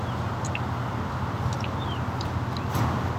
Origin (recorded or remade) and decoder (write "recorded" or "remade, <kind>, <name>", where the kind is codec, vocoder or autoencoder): recorded